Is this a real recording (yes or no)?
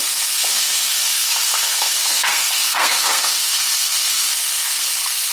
no